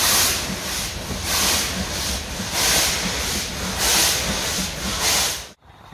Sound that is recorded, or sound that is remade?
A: recorded